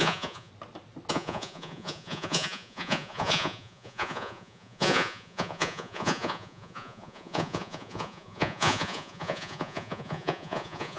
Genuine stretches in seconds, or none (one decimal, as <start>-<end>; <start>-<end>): 0.5-1.1